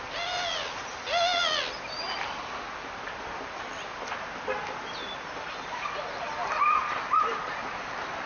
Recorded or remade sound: recorded